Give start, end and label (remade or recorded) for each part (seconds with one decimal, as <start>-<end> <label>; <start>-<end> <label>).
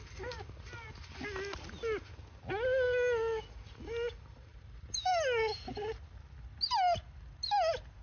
0.0-8.0 recorded